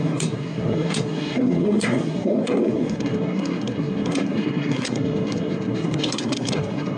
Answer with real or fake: fake